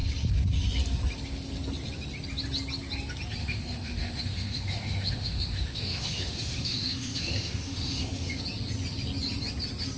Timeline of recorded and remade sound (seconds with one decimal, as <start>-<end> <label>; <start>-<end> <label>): 0.0-3.4 recorded; 3.4-8.4 remade; 8.4-10.0 recorded